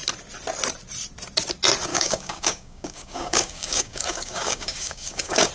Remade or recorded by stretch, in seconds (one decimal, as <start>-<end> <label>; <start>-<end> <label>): 0.0-1.9 recorded; 1.9-5.5 remade